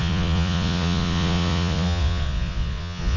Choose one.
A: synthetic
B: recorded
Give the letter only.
A